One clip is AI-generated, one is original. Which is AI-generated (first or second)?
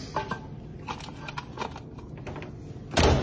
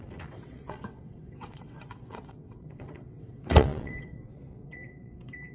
second